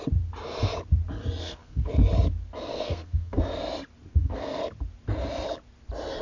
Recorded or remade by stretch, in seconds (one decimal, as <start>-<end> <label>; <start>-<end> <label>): 0.0-1.4 recorded; 1.4-1.9 remade; 1.9-2.7 recorded; 2.7-3.4 remade; 3.4-4.1 recorded; 4.1-4.6 remade; 4.6-6.2 recorded